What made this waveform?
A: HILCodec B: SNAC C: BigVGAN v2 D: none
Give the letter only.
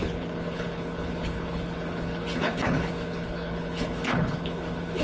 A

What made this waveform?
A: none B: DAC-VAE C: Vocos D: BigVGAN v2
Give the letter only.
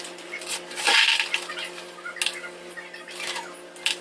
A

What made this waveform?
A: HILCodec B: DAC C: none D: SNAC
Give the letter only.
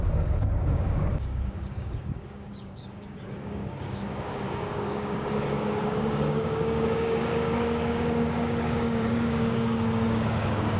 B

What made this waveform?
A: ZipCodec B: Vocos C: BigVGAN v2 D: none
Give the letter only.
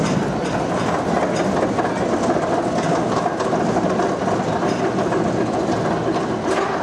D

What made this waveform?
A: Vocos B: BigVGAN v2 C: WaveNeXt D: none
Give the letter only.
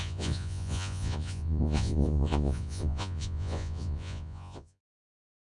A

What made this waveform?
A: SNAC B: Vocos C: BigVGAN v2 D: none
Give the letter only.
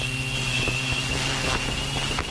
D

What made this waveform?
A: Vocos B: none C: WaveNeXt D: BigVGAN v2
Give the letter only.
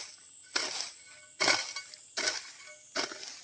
B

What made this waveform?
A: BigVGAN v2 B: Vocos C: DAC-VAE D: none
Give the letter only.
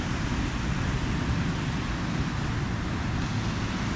D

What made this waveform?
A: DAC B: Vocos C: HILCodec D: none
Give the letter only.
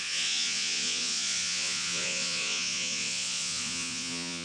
B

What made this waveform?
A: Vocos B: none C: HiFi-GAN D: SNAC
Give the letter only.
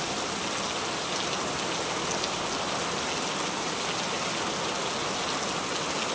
B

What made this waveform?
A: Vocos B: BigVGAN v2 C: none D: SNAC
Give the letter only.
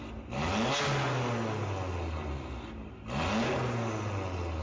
C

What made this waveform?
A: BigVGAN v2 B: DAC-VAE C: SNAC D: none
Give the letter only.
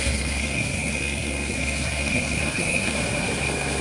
C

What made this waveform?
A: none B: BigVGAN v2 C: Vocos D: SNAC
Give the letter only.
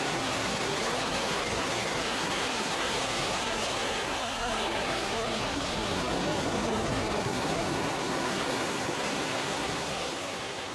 D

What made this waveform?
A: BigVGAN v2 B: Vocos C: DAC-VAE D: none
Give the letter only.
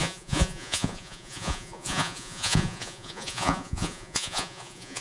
B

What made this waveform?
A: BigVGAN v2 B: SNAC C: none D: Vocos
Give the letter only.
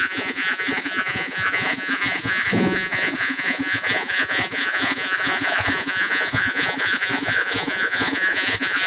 D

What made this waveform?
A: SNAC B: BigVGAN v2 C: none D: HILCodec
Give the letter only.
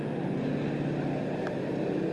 C